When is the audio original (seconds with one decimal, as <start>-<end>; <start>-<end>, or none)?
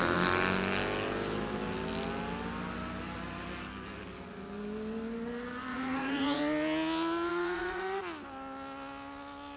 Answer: 0.0-5.7; 6.4-7.3; 8.0-9.6